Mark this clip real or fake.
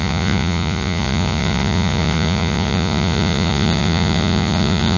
fake